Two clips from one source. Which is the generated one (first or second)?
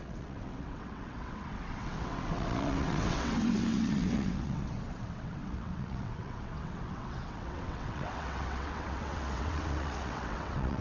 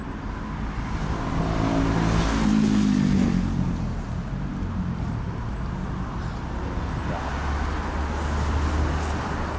first